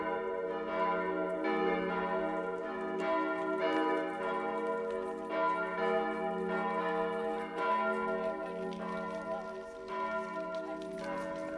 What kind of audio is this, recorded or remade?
recorded